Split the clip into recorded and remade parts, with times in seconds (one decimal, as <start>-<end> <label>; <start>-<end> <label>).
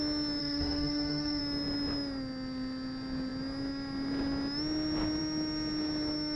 0.0-0.4 recorded; 0.4-1.4 remade; 1.4-6.4 recorded